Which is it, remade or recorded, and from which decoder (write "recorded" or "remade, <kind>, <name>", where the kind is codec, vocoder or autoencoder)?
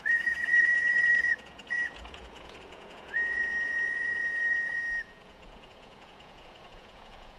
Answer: remade, vocoder, Vocos